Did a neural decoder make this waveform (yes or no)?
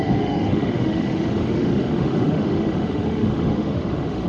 yes